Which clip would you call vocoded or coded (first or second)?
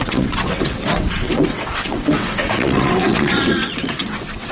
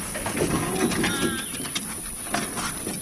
first